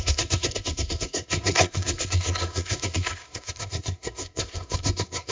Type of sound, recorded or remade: remade